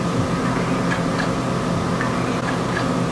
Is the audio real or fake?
real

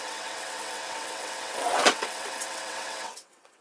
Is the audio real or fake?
fake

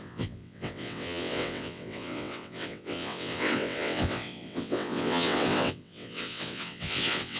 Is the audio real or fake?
fake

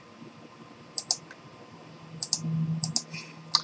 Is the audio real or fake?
real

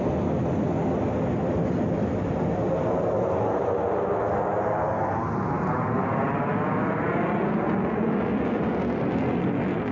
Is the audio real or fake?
real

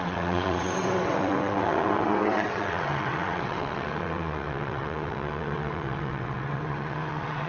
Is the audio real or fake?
fake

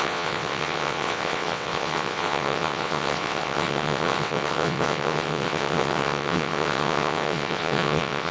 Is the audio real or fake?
fake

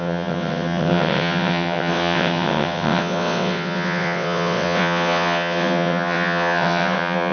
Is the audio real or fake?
fake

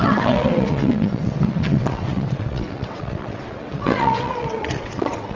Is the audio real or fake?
fake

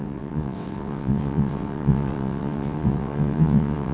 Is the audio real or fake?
fake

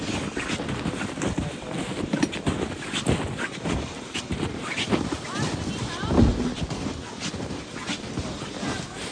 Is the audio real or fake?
real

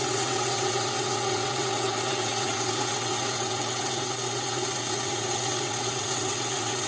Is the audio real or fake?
fake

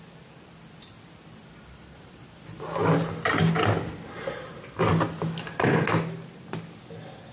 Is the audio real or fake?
real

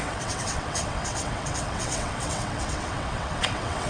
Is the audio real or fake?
fake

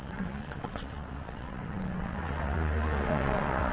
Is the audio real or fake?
fake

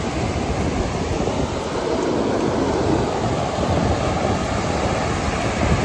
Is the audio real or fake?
real